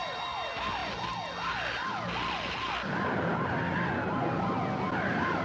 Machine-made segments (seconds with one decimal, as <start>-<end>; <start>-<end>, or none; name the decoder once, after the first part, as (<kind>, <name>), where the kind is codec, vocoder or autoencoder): none